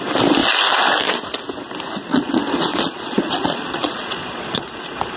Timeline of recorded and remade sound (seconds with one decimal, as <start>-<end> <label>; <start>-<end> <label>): 0.0-2.1 recorded; 2.1-5.2 remade